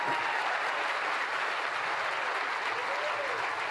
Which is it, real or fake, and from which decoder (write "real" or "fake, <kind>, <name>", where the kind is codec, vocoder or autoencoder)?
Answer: real